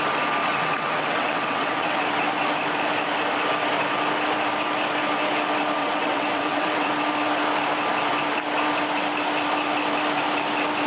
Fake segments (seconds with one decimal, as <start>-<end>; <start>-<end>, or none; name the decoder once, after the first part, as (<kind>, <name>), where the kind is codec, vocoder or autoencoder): 0.4-2.0 (vocoder, WaveNeXt); 5.8-6.9